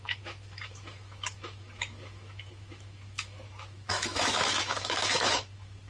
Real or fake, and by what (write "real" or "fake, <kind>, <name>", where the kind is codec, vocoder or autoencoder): fake, autoencoder, DAC-VAE